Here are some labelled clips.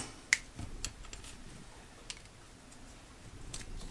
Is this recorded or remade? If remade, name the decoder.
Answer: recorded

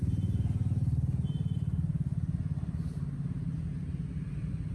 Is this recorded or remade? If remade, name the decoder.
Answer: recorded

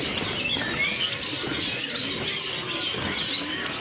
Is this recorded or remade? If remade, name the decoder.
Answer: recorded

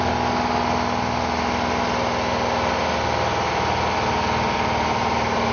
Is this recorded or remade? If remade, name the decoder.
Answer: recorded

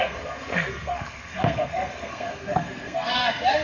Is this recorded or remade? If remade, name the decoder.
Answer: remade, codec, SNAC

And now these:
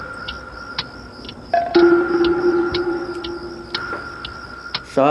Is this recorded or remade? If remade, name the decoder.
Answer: recorded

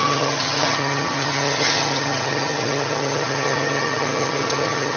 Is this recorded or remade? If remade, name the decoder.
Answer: remade, vocoder, HiFi-GAN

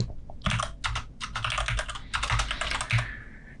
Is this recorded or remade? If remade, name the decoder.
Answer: recorded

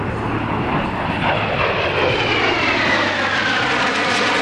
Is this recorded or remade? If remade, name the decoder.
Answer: recorded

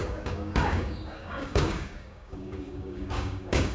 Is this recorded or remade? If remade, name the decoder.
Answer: remade, codec, DAC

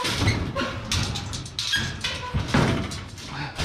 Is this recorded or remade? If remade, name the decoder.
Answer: recorded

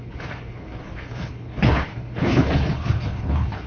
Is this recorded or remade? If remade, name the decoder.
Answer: remade, codec, HILCodec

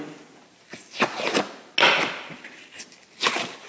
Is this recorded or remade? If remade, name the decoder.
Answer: recorded